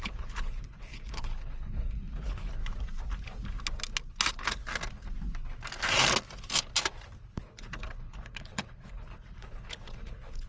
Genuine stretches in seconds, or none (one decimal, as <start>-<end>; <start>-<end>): 2.6-4.3; 4.7-7.2